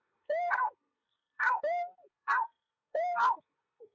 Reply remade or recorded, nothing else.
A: remade